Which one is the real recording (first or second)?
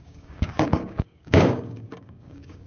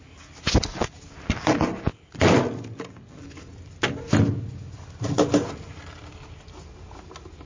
second